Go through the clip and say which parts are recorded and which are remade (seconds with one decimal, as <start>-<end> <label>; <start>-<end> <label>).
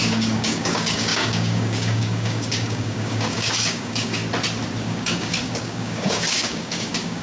0.0-4.2 remade; 4.2-4.8 recorded; 4.8-7.2 remade